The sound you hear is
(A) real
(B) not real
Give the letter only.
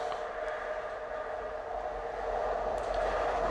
A